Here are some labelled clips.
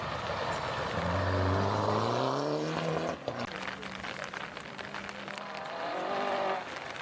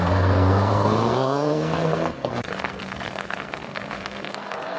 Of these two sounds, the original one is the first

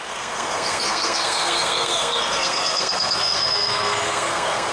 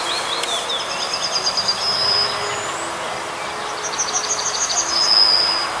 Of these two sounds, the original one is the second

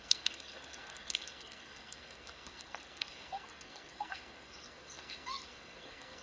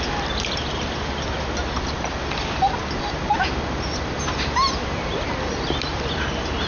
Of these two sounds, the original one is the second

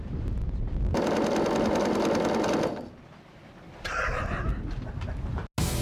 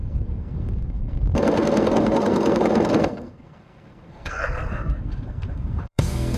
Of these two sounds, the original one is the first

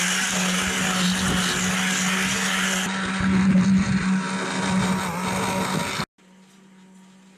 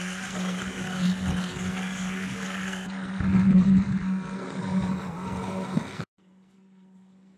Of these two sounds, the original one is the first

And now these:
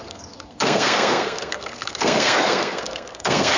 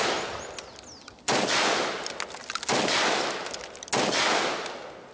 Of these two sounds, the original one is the second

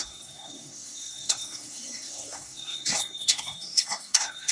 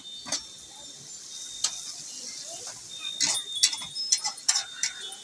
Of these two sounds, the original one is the second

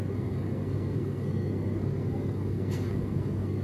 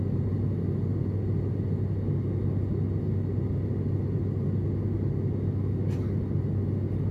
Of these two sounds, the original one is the second